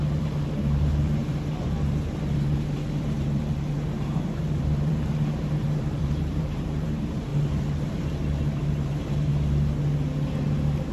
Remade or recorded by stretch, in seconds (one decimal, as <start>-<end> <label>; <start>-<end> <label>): 0.0-7.3 remade; 7.3-7.9 recorded; 7.9-9.3 remade; 9.3-10.9 recorded